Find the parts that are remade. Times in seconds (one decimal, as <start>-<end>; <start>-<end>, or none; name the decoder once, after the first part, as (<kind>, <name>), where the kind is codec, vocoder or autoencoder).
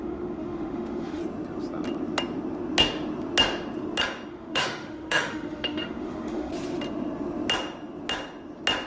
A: 0.0-1.2 (autoencoder, DAC-VAE); 4.3-6.5